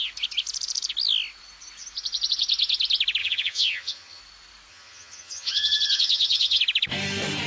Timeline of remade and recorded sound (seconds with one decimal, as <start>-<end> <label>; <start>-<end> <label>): 0.0-3.2 recorded; 3.2-4.2 remade; 4.2-4.7 recorded; 4.7-6.6 remade; 6.6-7.5 recorded